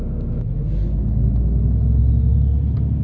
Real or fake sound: real